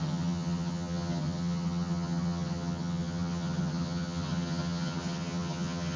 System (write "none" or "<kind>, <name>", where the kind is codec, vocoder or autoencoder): vocoder, HiFi-GAN